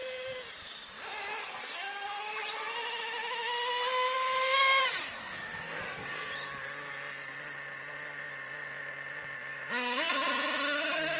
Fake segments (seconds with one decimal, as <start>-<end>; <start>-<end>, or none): 5.2-5.8